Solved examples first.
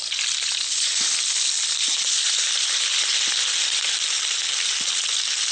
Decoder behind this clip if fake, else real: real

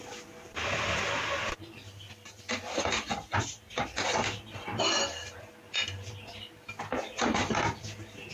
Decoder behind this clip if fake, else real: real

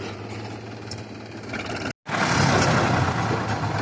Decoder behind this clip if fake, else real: real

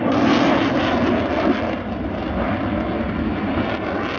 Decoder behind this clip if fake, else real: real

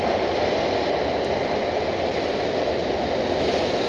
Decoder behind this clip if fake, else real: real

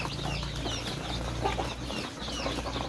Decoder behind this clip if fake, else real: real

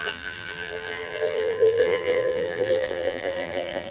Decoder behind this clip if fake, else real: fake, vocoder, BigVGAN v2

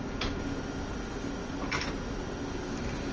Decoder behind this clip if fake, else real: real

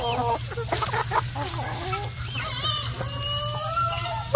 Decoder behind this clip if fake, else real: real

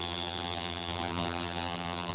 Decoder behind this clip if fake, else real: fake, vocoder, BigVGAN v2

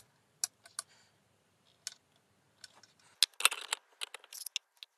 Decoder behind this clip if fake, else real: real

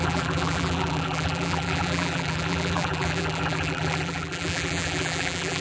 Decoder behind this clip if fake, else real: fake, vocoder, BigVGAN v2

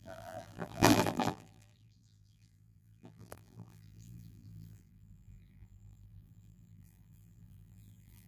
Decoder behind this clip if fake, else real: fake, vocoder, BigVGAN v2